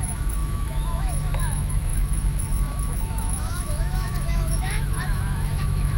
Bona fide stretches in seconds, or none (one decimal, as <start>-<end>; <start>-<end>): none